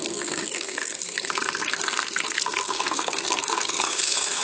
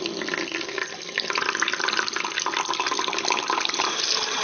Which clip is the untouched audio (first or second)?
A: second